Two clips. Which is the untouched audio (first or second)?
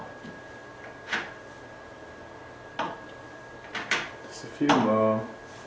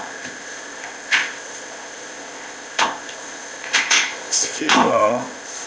first